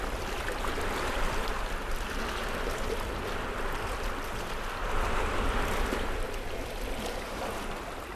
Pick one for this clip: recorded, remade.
recorded